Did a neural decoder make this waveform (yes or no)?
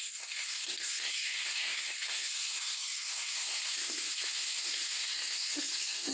yes